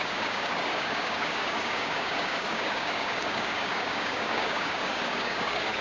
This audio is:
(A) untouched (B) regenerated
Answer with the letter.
B